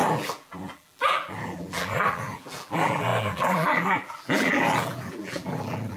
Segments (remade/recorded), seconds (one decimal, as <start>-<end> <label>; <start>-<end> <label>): 0.0-6.0 remade